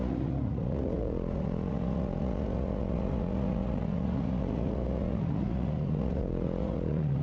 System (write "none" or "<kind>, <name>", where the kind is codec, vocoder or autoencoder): vocoder, Vocos